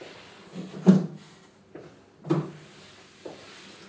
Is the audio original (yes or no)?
yes